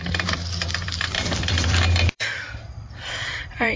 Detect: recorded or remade remade